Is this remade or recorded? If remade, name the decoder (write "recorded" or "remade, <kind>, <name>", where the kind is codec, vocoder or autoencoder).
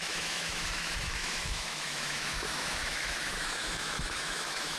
remade, autoencoder, DAC-VAE